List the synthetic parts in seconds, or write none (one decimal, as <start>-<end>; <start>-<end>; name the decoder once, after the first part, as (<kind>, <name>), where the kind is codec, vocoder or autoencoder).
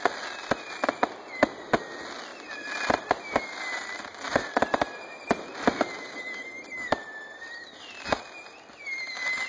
none